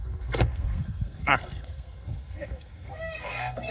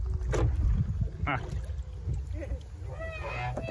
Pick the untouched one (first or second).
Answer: second